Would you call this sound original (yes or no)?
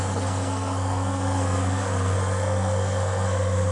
no